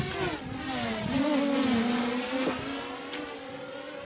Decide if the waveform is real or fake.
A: real